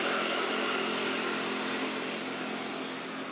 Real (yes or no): yes